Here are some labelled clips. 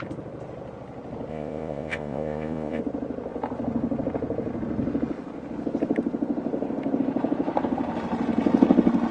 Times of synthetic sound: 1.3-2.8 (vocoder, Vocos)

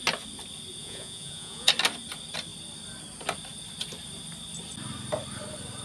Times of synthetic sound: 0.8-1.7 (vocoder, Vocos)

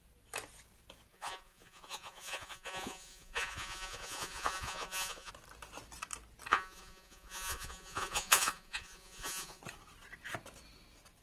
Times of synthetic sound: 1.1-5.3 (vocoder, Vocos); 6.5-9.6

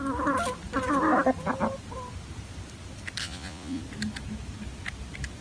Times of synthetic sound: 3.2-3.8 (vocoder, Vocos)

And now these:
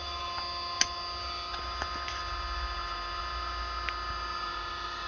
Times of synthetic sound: none

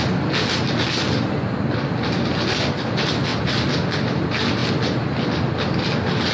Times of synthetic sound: none

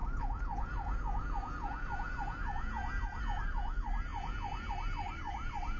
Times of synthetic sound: 0.0-3.2 (vocoder, Vocos); 4.1-4.7

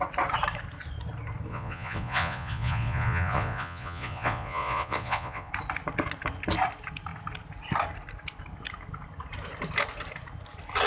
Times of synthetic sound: 1.5-5.5 (vocoder, Vocos)